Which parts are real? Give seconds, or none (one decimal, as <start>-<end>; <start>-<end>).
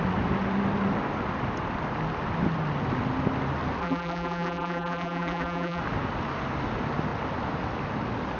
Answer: 0.0-3.8; 5.8-8.4